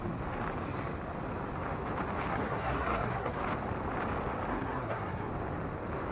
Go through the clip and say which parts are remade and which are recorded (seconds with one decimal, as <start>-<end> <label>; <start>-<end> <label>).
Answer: 0.0-2.3 recorded; 2.3-3.4 remade; 3.4-4.5 recorded; 4.5-5.3 remade; 5.3-6.1 recorded